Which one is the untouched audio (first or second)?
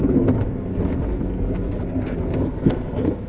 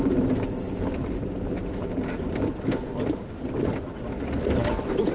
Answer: second